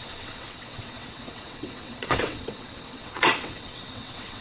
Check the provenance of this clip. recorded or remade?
remade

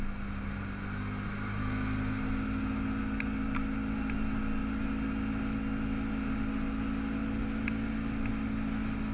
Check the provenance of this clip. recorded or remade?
recorded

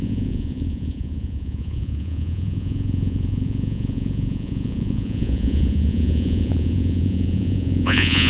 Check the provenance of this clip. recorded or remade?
remade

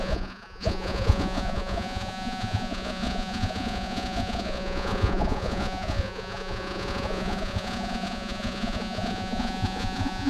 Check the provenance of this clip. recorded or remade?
remade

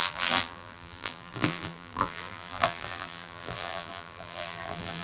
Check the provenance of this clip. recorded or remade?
remade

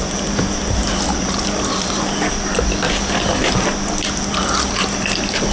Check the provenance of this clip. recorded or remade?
recorded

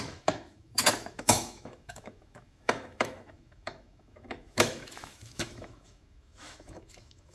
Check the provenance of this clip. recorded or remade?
remade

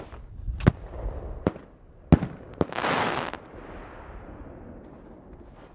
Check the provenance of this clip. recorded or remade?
recorded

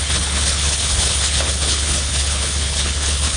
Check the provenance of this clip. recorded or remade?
remade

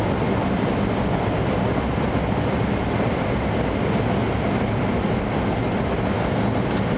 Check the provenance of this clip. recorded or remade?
recorded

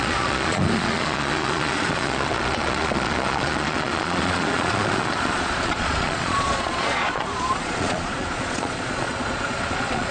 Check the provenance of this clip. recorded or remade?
remade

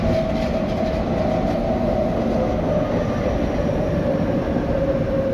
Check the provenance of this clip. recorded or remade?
recorded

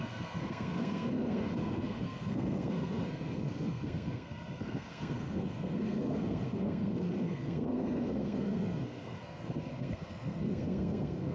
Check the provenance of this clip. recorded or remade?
remade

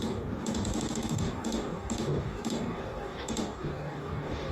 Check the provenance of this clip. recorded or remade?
remade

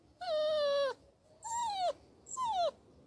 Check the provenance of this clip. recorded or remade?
recorded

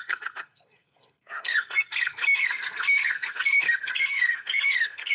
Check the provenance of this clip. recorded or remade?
remade